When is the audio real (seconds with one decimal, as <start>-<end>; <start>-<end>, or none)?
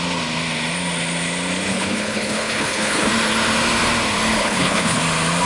0.0-1.7; 3.1-4.4; 5.0-5.5